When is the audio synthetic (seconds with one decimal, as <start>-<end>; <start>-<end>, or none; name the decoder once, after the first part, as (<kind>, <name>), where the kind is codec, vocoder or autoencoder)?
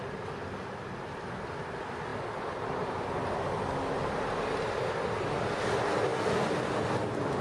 none